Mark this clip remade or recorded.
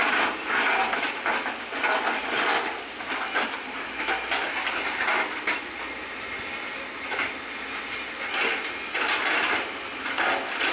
recorded